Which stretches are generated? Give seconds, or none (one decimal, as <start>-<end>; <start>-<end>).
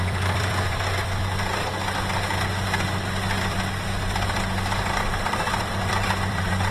0.0-1.2; 5.2-6.7